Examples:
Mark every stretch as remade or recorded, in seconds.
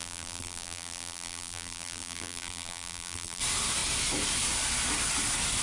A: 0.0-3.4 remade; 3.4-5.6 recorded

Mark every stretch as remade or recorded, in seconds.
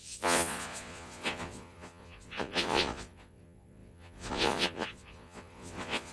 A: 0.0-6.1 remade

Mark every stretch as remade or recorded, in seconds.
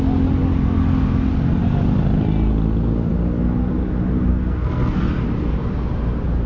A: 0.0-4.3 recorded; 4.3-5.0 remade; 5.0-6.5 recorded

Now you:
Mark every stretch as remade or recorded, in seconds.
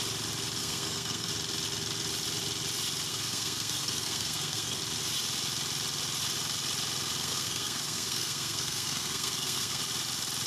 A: 0.0-0.6 recorded; 0.6-1.3 remade; 1.3-3.1 recorded; 3.1-4.8 remade; 4.8-7.2 recorded; 7.2-9.8 remade; 9.8-10.5 recorded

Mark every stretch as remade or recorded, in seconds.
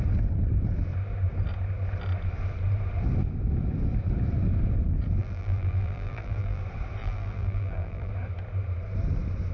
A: 0.0-5.2 recorded; 5.2-6.6 remade; 6.6-7.0 recorded; 7.0-8.1 remade; 8.1-9.5 recorded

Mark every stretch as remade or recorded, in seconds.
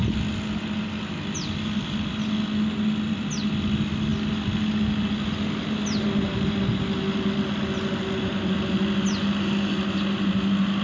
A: 0.0-10.8 recorded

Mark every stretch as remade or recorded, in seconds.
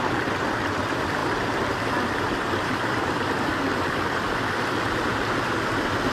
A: 0.0-6.1 recorded